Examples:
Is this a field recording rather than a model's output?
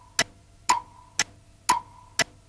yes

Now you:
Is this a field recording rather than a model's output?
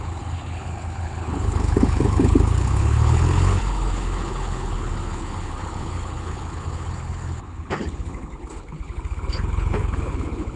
no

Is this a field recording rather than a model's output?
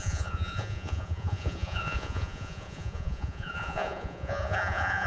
no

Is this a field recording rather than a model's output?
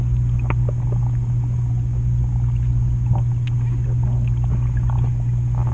yes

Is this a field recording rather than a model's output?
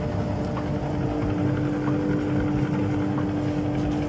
yes